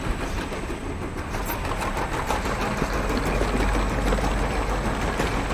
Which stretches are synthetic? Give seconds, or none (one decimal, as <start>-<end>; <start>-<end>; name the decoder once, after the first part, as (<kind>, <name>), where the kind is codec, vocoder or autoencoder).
0.8-1.4 (vocoder, BigVGAN v2)